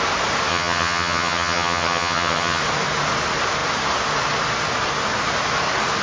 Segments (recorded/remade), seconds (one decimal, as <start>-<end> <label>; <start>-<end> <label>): 0.0-0.5 recorded; 0.5-2.6 remade; 2.6-6.0 recorded